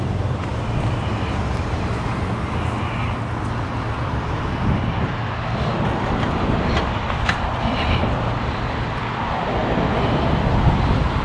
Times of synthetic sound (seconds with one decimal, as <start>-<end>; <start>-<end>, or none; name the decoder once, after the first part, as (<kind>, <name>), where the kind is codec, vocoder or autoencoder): 0.0-0.5 (vocoder, BigVGAN v2); 4.1-9.6; 10.6-11.2